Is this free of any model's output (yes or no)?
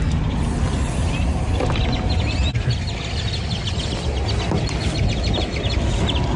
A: yes